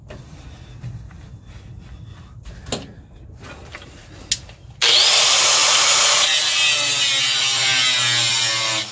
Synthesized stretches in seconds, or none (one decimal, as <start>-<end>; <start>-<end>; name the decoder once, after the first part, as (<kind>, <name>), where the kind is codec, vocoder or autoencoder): none